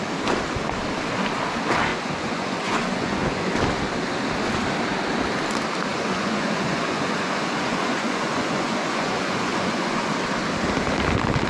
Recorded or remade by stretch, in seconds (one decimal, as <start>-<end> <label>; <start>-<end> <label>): 0.0-1.9 recorded; 1.9-3.5 remade; 3.5-5.9 recorded; 5.9-10.1 remade; 10.1-11.5 recorded